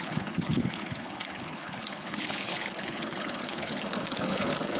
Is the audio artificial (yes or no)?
yes